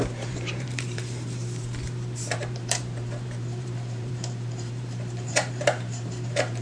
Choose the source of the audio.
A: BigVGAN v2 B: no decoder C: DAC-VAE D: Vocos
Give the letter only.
A